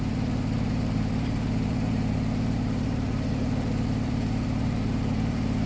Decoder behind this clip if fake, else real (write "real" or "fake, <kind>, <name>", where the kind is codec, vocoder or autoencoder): fake, vocoder, BigVGAN v2